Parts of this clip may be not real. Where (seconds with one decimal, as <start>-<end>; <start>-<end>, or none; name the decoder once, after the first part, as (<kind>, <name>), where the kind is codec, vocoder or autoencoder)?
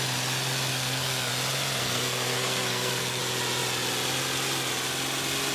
0.7-1.3 (codec, SNAC); 1.8-3.2